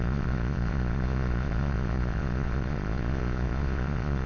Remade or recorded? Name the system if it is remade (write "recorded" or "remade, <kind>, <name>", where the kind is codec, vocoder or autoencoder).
remade, vocoder, Vocos